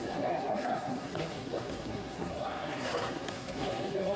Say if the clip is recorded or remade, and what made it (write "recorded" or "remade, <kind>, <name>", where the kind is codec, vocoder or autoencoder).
remade, codec, SNAC